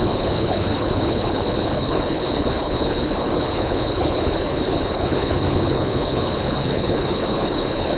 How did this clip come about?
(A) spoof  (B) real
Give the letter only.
A